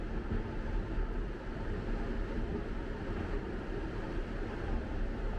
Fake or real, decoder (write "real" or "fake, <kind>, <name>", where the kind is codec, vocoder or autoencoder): fake, vocoder, BigVGAN v2